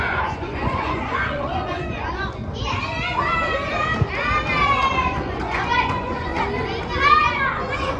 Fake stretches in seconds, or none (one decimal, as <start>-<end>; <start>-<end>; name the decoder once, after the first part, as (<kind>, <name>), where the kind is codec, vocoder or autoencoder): 0.0-2.4 (vocoder, Vocos); 4.9-6.3; 7.2-8.0